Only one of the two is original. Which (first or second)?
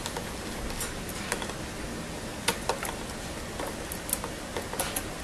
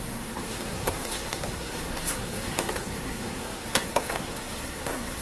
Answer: first